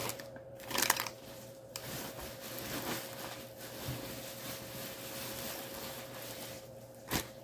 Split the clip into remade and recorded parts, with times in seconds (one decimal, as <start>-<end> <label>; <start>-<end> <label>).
0.0-2.4 remade; 2.4-5.8 recorded; 5.8-7.4 remade

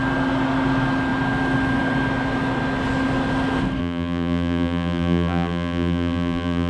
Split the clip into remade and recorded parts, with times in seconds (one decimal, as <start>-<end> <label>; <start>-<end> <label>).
0.0-3.8 recorded; 3.8-6.7 remade

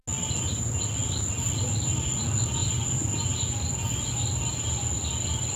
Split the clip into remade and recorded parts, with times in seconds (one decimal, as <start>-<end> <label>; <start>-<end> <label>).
0.0-5.6 recorded